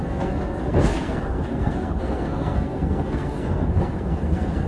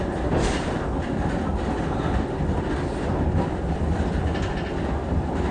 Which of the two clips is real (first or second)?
second